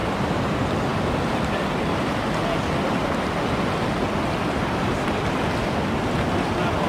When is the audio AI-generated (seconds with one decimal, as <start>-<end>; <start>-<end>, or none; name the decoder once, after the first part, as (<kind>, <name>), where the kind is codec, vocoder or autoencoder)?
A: 0.0-0.5 (vocoder, BigVGAN v2)